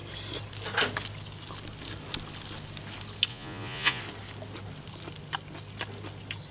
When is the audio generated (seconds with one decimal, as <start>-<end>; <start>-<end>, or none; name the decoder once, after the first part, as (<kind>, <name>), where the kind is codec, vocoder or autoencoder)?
3.3-4.0 (vocoder, Vocos)